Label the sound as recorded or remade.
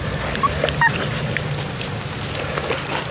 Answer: recorded